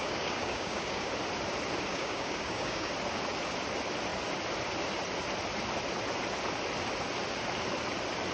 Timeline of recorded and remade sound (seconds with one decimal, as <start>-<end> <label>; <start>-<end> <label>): 0.0-1.1 remade; 1.1-1.9 recorded; 1.9-2.9 remade; 2.9-8.3 recorded